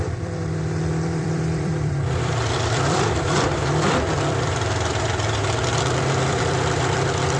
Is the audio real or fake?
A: fake